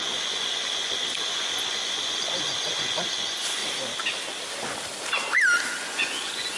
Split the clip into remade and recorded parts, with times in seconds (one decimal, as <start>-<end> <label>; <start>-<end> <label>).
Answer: 0.0-3.6 remade; 3.6-5.8 recorded; 5.8-6.6 remade